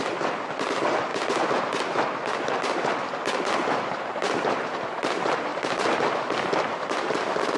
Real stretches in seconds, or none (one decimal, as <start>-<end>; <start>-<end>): 1.1-3.9; 5.5-7.1